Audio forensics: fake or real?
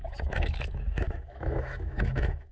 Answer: fake